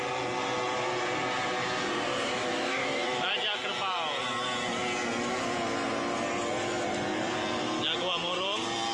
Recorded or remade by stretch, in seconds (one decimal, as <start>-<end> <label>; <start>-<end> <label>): 0.0-2.4 recorded; 2.4-3.3 remade; 3.3-8.9 recorded